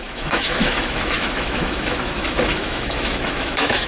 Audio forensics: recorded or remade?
remade